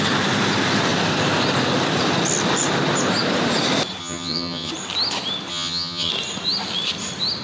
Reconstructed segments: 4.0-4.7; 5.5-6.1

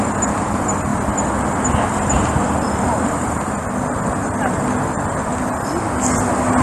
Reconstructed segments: none

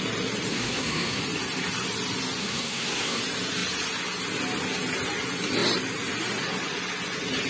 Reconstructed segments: 0.5-1.2; 2.4-3.2

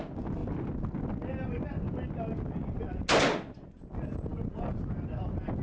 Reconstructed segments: none

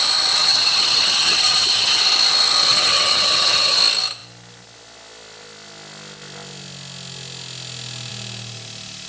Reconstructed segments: 0.4-2.0; 2.7-3.8

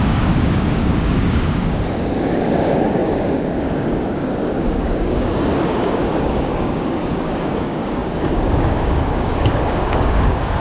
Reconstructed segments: 0.0-10.6

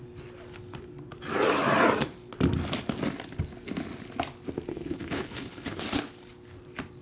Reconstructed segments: 4.7-5.8

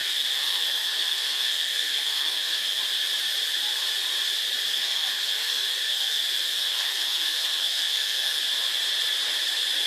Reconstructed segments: 0.0-2.8; 4.7-8.4